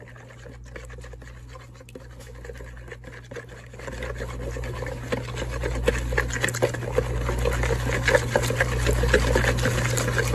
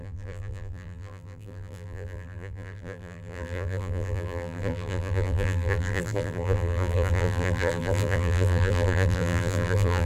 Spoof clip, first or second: second